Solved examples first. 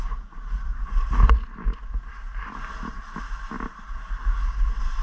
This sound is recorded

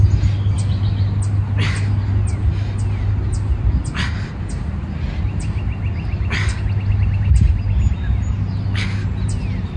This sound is recorded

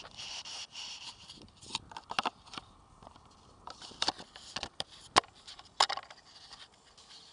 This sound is remade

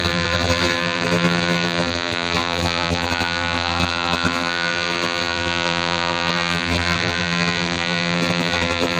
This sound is remade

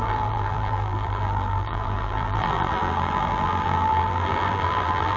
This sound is remade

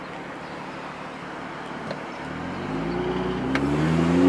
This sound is recorded